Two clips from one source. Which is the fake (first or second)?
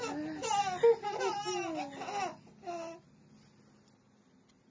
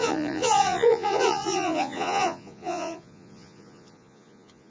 second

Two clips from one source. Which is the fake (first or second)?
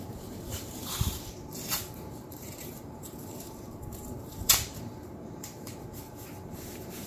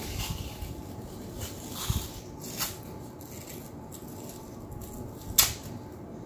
first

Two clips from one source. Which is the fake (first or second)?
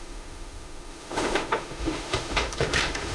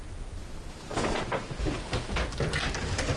first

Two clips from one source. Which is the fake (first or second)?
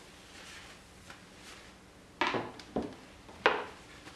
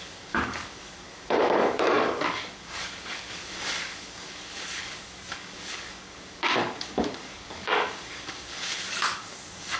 second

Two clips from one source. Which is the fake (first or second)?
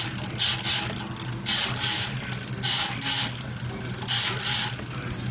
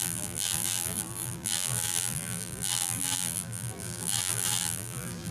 second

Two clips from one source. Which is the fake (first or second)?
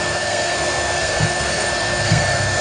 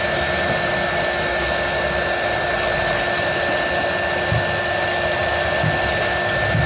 first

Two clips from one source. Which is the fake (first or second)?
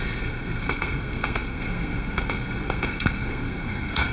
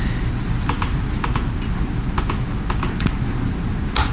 first